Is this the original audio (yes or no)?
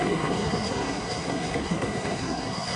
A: no